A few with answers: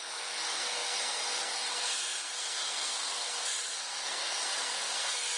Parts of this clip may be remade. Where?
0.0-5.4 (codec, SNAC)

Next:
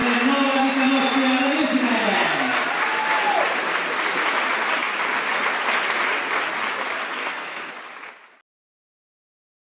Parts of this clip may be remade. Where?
2.0-2.6 (codec, SNAC); 7.2-7.7